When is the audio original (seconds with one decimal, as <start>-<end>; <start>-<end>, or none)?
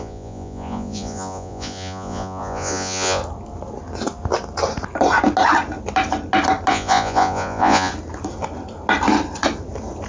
3.2-6.7; 7.9-10.1